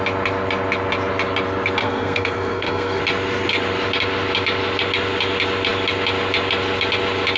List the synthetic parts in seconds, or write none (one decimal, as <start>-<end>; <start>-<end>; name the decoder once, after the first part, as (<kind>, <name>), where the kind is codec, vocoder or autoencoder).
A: 1.8-3.0 (codec, SNAC)